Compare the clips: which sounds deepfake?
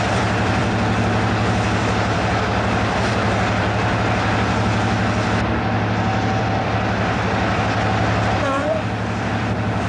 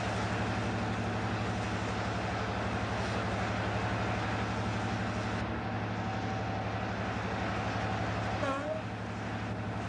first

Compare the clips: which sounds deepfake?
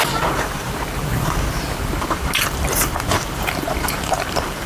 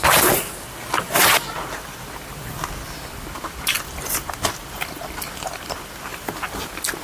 first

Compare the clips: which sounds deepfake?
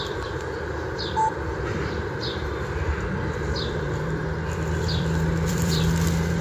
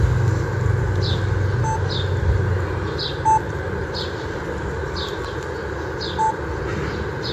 first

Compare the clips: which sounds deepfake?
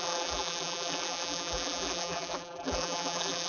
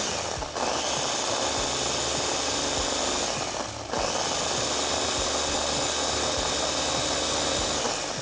first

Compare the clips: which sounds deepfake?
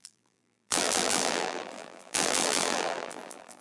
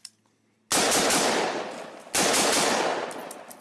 first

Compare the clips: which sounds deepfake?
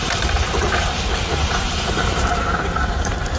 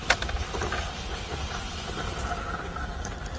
first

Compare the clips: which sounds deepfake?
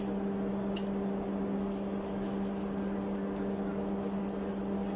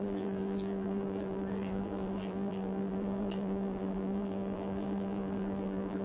second